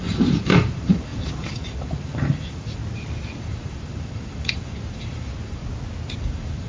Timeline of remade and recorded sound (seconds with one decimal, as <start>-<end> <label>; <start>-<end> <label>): 0.0-2.8 remade; 2.8-3.4 recorded; 3.4-5.6 remade; 5.6-6.2 recorded; 6.2-6.7 remade